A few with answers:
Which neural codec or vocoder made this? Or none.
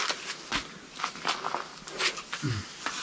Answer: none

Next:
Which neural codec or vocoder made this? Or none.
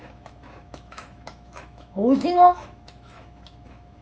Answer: autoencoder, DAC-VAE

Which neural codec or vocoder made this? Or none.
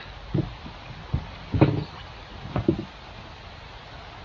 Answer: none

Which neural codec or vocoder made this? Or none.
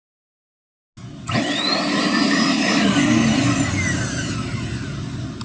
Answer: none